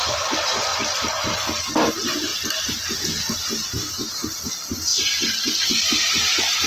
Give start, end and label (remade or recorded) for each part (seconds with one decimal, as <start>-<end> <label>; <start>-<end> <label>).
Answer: 0.0-0.7 remade; 0.7-1.9 recorded; 1.9-2.3 remade; 2.3-3.4 recorded; 3.4-4.9 remade; 4.9-5.9 recorded; 5.9-6.7 remade